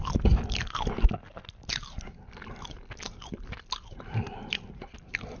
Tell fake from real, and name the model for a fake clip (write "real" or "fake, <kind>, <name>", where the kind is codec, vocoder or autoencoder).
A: real